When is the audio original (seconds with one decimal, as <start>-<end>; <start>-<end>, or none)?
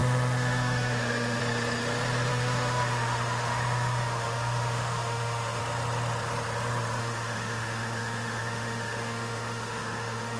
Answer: 1.4-2.3; 5.6-7.0